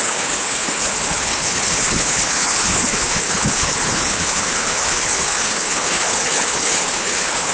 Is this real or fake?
fake